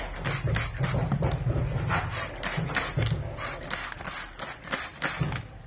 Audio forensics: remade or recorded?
recorded